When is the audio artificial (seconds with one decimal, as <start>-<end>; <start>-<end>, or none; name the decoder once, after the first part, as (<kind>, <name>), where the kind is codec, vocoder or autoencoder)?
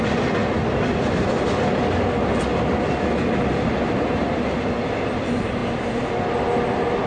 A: none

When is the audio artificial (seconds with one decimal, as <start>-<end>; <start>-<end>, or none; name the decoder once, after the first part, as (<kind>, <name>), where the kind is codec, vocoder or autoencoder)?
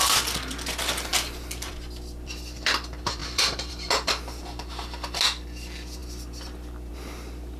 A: 3.2-3.7 (vocoder, BigVGAN v2)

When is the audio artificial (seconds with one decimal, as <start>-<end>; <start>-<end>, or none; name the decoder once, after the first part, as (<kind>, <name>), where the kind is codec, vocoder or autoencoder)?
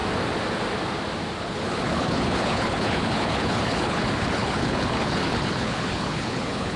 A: 1.4-6.8 (codec, HILCodec)